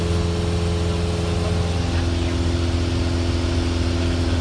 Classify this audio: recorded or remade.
recorded